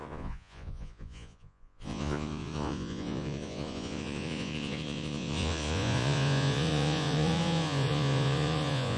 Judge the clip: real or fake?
fake